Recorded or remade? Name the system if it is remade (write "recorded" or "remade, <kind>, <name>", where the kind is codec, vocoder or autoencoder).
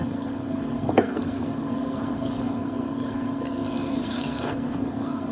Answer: remade, codec, SNAC